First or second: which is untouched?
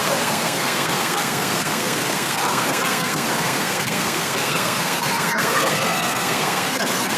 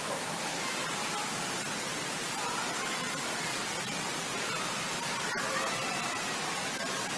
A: second